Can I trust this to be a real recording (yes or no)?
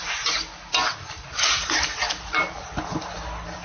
yes